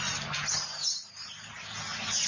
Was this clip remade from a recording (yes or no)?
no